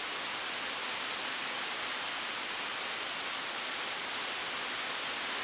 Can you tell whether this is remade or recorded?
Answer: remade